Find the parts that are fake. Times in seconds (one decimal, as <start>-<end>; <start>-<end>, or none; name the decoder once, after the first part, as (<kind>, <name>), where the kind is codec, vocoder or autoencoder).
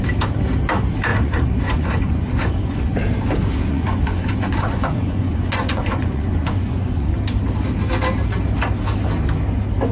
1.1-2.9 (vocoder, Vocos); 3.6-7.1